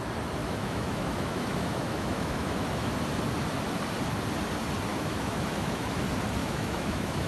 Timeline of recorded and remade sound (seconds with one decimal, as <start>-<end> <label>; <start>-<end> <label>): 0.0-0.4 recorded; 0.4-2.9 remade; 2.9-4.9 recorded; 4.9-6.0 remade; 6.0-6.4 recorded; 6.4-7.3 remade